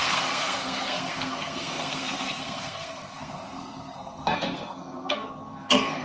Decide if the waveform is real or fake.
fake